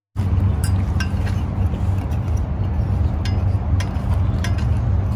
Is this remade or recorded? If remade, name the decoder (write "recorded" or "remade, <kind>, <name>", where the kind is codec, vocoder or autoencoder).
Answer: recorded